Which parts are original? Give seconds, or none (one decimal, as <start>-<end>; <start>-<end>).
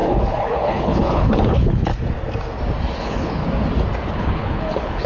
1.9-3.0; 3.4-4.1